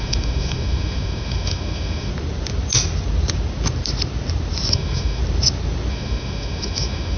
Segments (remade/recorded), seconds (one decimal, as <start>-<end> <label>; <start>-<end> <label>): 0.0-2.1 remade; 2.1-4.7 recorded; 4.7-5.2 remade; 5.2-5.9 recorded; 5.9-7.2 remade